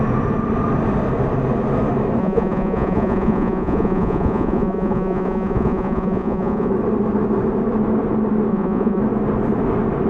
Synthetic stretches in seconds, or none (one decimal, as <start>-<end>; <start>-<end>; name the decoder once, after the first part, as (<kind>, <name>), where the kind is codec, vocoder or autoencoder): 2.2-6.7 (vocoder, Vocos); 8.5-9.0